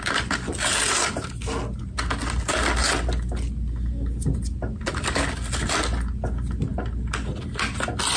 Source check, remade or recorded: recorded